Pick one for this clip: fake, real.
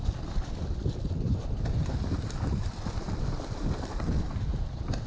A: real